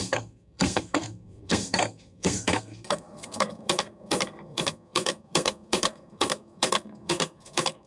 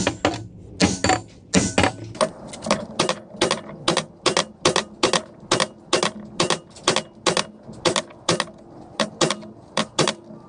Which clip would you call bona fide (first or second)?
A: second